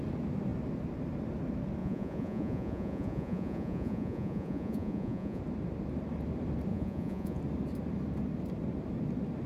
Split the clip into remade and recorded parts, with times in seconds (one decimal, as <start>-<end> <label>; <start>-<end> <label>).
0.0-1.8 recorded; 1.8-5.4 remade; 5.4-6.7 recorded; 6.7-7.4 remade; 7.4-9.5 recorded

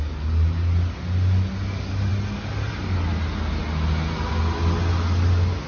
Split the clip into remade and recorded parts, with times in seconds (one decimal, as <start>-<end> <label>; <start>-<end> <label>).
0.0-5.7 recorded